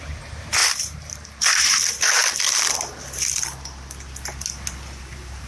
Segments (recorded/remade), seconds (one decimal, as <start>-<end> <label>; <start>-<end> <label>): 0.0-0.6 recorded; 0.6-1.4 remade; 1.4-5.5 recorded